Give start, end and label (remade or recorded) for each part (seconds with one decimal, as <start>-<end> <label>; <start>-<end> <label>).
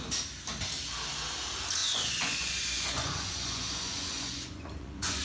0.0-1.8 recorded; 1.8-5.2 remade